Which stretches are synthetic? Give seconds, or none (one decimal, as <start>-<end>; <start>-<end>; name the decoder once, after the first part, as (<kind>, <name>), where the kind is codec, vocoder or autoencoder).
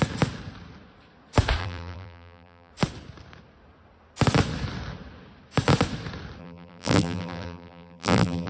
1.6-2.7 (vocoder, BigVGAN v2); 6.4-8.5